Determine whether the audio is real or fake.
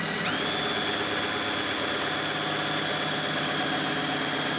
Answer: real